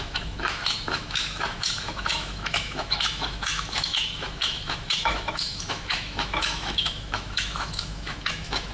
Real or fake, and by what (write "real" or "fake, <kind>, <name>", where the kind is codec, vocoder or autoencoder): fake, autoencoder, DAC-VAE